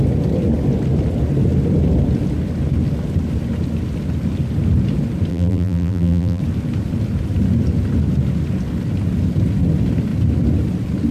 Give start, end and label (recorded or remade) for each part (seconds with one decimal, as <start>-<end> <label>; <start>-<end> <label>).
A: 0.0-5.3 recorded; 5.3-6.4 remade; 6.4-11.1 recorded